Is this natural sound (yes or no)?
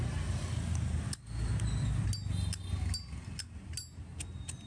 yes